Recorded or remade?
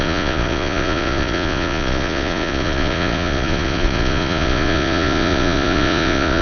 remade